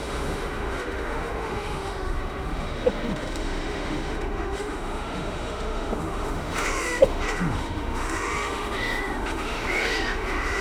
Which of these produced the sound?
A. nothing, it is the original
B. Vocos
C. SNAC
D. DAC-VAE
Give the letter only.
D